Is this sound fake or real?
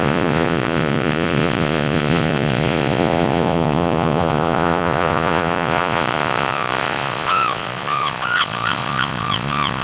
fake